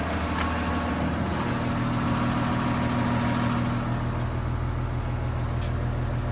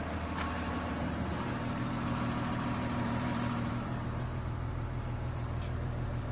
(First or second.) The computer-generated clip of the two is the second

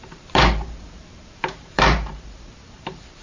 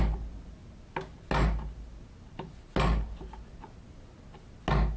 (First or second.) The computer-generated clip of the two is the first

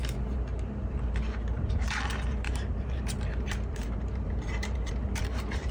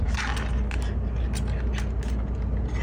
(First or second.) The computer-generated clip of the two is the first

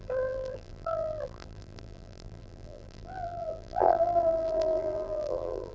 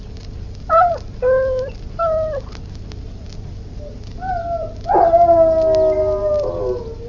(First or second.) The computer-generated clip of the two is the first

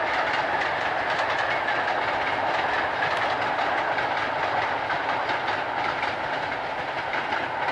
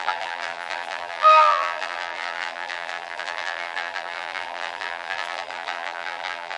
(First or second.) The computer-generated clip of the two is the second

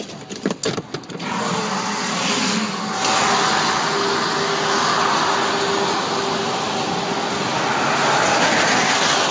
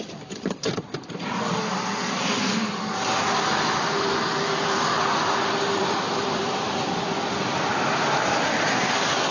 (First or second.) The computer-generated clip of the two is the second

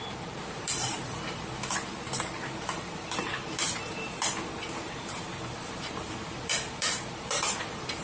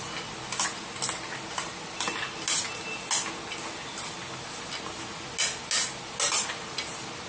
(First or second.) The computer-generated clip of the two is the first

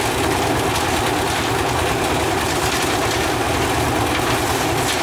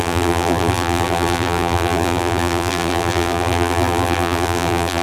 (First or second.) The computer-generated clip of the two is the second